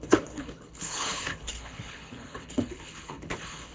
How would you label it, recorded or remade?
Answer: remade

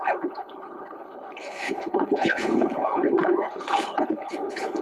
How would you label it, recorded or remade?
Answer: remade